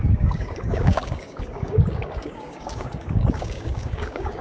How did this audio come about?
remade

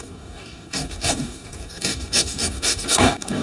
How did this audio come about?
remade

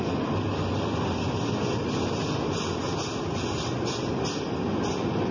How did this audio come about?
recorded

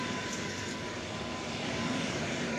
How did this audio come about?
remade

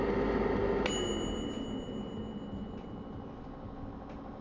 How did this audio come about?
recorded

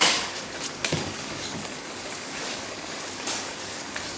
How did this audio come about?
remade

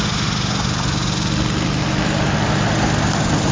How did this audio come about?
recorded